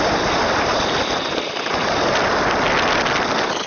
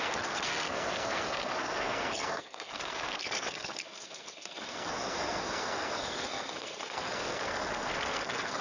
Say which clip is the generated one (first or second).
second